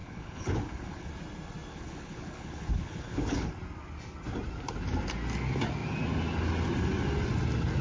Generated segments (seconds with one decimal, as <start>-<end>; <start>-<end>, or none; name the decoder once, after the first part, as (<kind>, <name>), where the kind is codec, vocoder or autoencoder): 0.0-1.1 (codec, HILCodec); 1.7-3.5